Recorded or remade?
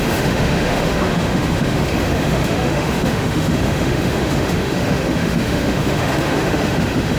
remade